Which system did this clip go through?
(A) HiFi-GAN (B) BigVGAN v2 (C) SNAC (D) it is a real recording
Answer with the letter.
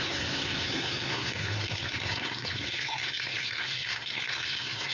C